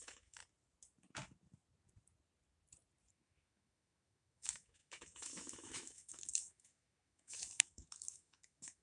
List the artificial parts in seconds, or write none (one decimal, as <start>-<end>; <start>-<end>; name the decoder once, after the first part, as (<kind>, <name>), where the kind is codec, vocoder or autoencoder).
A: 0.0-0.4 (autoencoder, DAC-VAE); 3.1-8.8